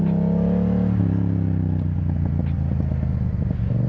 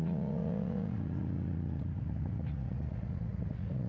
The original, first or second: first